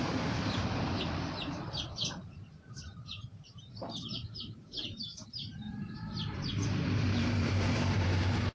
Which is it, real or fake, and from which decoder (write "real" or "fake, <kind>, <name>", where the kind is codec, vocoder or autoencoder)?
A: fake, vocoder, BigVGAN v2